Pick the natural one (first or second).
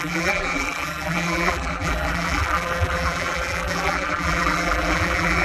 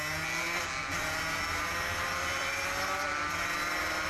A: second